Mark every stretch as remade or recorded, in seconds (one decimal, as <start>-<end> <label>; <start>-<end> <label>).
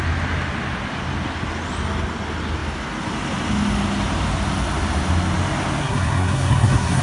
0.0-5.8 recorded; 5.8-7.0 remade